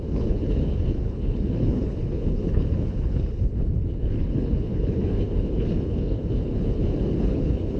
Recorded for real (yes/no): no